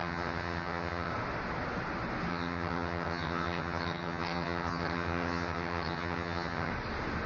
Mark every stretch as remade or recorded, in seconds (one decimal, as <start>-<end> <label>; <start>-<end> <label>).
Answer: 0.0-1.1 remade; 1.1-2.3 recorded; 2.3-6.7 remade; 6.7-7.3 recorded